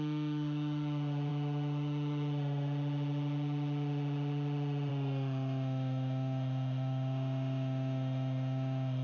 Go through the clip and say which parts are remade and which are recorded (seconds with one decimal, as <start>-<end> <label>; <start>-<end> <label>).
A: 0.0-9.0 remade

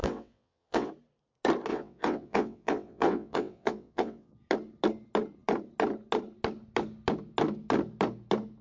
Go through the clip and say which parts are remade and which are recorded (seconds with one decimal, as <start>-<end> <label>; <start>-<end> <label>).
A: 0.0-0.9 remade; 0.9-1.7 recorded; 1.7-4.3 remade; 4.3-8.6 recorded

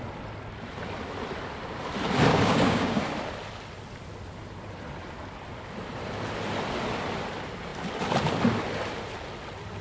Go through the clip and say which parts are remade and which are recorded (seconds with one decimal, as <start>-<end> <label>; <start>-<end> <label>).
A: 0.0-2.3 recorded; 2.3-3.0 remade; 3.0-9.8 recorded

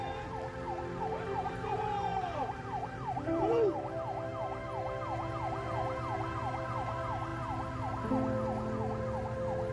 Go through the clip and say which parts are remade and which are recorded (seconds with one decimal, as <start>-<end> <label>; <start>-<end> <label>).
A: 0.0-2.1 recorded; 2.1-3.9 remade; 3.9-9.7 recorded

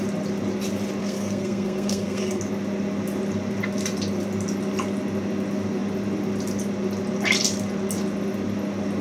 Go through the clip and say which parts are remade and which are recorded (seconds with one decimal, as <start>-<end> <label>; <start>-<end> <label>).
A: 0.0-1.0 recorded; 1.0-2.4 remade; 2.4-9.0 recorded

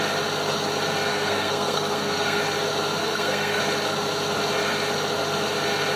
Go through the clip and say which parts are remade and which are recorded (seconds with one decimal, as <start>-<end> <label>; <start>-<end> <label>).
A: 0.0-1.1 recorded; 1.1-2.4 remade; 2.4-3.0 recorded; 3.0-3.6 remade; 3.6-6.0 recorded

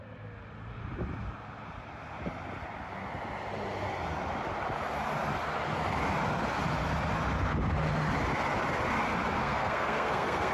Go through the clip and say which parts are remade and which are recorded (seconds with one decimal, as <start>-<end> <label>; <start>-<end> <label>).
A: 0.0-9.4 recorded; 9.4-10.5 remade